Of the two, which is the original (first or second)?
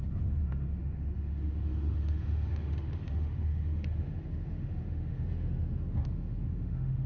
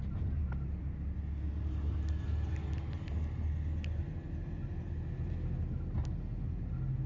second